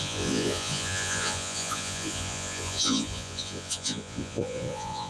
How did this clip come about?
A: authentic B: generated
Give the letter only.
B